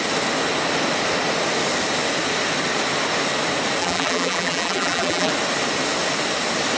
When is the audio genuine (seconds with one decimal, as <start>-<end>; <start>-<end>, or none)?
0.0-3.8; 5.3-6.8